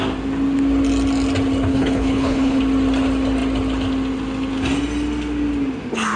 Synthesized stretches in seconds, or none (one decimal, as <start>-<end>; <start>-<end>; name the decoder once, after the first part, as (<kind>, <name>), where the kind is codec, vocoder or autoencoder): 1.7-2.6 (codec, HILCodec)